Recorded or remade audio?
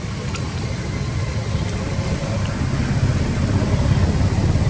recorded